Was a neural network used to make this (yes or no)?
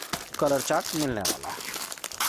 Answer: no